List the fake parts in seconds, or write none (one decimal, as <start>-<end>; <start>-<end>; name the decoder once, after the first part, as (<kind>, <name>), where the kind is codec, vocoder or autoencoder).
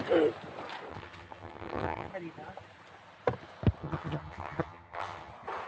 0.9-2.1 (vocoder, HiFi-GAN); 3.8-5.3